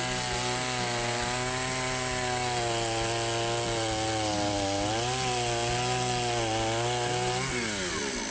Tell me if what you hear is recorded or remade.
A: recorded